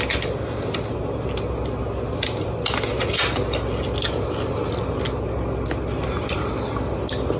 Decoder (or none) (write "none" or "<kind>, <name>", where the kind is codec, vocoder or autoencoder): none